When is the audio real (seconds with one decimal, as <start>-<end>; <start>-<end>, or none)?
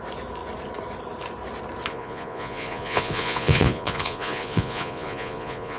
0.0-1.9